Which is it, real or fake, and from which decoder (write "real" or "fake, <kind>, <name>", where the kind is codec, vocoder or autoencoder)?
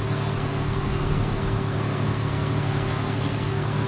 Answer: fake, codec, SNAC